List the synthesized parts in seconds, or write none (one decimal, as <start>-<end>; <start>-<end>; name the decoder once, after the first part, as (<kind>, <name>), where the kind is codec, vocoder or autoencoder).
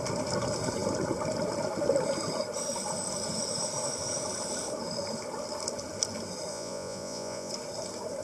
6.5-7.5 (vocoder, Vocos)